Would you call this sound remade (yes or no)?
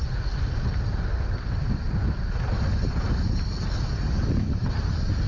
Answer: no